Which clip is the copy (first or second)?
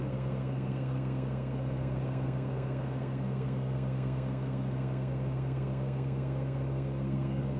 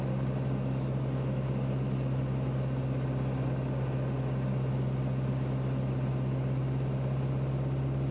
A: first